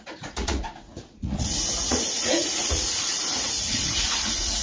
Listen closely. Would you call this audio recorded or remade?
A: remade